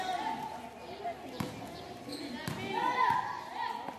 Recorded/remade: recorded